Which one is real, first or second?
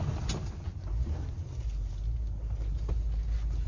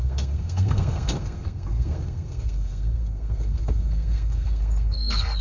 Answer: first